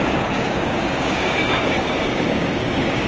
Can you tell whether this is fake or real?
fake